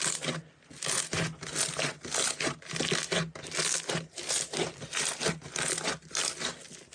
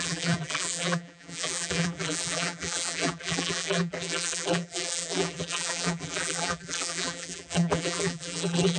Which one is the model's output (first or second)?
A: second